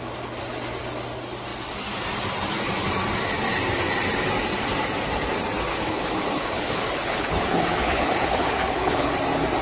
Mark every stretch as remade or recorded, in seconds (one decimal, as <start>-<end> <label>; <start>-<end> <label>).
0.0-5.7 recorded; 5.7-9.1 remade; 9.1-9.6 recorded